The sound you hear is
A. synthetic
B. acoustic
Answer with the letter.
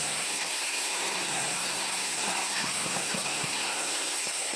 A